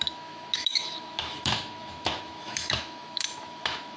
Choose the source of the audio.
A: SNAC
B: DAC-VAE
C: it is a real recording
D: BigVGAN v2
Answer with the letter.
B